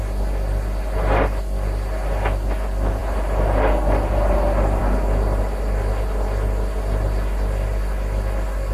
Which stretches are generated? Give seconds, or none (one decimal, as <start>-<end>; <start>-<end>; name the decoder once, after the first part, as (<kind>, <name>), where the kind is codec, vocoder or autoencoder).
none